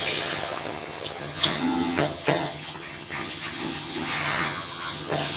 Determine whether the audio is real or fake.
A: fake